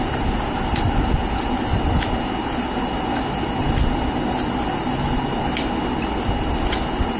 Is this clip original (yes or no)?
yes